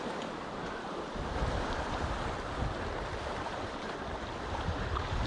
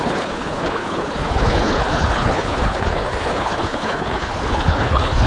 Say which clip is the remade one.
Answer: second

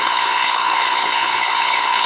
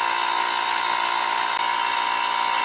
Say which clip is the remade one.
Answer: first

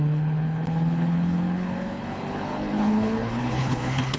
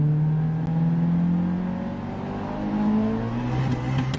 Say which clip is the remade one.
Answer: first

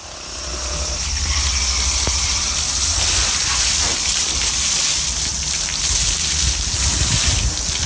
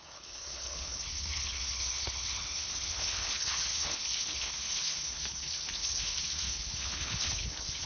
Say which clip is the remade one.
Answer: second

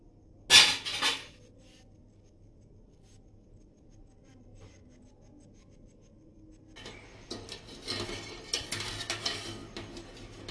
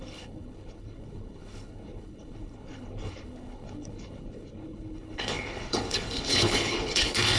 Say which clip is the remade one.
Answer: second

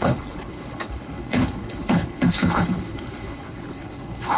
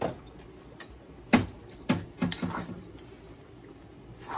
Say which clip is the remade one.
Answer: first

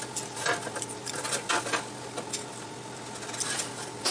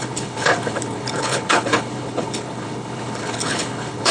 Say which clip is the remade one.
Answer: second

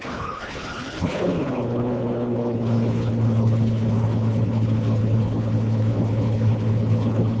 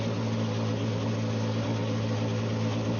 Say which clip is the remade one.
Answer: first